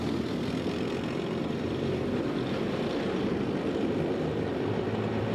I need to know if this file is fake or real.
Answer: fake